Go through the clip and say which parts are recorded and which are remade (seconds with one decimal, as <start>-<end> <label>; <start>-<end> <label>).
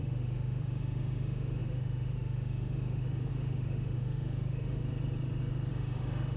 0.0-4.8 remade; 4.8-5.7 recorded; 5.7-6.4 remade